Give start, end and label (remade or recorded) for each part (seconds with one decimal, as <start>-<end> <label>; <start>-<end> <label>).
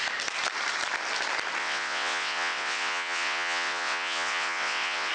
0.0-1.6 recorded; 1.6-5.1 remade